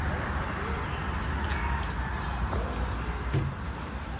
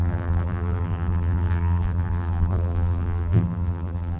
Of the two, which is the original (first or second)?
first